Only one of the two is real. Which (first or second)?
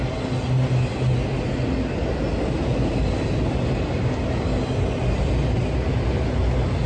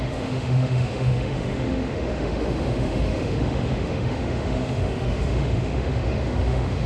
first